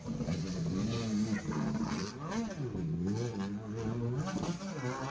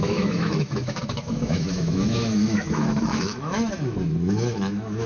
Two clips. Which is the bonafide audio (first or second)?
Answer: first